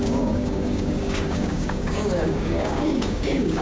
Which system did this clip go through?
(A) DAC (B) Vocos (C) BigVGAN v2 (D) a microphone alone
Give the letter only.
A